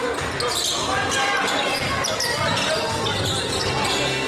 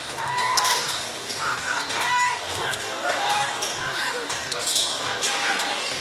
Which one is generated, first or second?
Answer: second